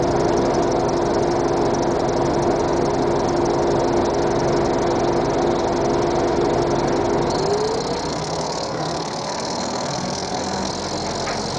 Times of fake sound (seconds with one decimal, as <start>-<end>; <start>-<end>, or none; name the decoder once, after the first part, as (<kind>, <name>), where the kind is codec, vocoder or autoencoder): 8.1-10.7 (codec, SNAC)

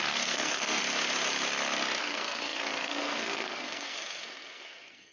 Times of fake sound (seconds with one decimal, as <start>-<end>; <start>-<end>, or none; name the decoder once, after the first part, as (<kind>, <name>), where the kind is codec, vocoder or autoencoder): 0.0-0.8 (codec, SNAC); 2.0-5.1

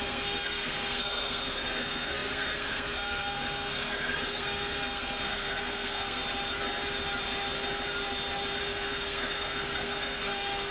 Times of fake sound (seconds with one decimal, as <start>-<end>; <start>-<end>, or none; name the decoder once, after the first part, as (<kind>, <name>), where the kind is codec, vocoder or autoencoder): 0.0-6.2 (codec, SNAC); 8.6-10.7

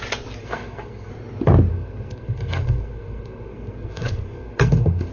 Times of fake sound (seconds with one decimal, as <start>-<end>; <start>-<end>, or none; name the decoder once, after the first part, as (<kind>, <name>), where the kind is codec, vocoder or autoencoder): 0.4-1.1 (codec, SNAC); 1.7-5.1

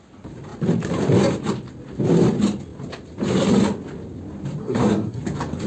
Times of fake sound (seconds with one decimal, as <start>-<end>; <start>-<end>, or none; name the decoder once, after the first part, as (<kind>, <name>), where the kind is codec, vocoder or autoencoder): 4.6-5.2 (codec, SNAC)